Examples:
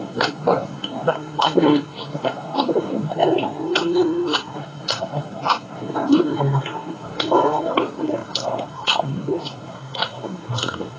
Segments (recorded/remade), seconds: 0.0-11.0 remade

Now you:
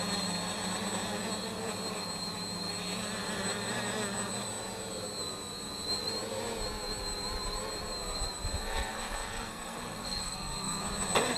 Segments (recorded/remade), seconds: 0.0-8.6 recorded; 8.6-10.8 remade; 10.8-11.4 recorded

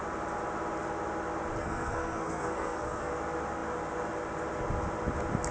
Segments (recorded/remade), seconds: 0.0-1.6 recorded; 1.6-3.1 remade; 3.1-5.5 recorded

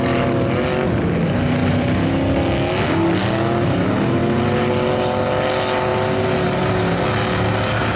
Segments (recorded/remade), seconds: 0.0-8.0 recorded

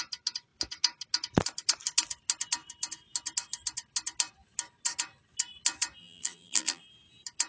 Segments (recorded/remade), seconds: 0.0-6.0 recorded; 6.0-6.8 remade; 6.8-7.5 recorded